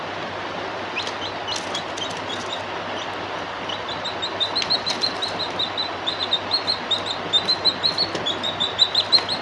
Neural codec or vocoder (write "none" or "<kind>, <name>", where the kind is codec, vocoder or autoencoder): none